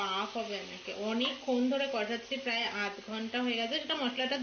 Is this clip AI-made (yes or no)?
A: no